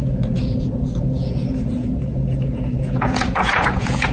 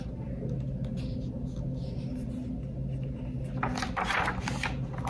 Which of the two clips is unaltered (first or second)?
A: second